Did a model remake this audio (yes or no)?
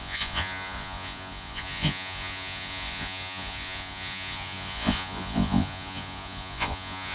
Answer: yes